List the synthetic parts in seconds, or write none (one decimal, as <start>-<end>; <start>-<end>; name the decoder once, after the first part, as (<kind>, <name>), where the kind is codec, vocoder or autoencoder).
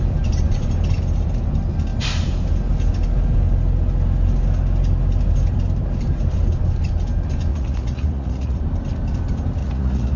7.5-8.6 (vocoder, Vocos); 9.6-10.2